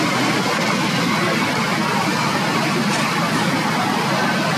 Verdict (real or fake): real